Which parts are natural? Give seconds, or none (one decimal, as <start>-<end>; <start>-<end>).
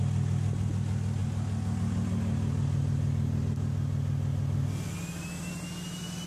0.0-6.3